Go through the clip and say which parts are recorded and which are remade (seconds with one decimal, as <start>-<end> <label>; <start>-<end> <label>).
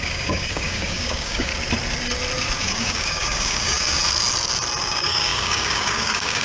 0.0-1.5 remade; 1.5-2.6 recorded; 2.6-4.0 remade; 4.0-4.8 recorded; 4.8-6.4 remade